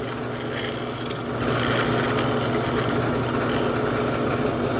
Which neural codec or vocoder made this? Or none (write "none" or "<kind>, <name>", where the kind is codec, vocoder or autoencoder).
none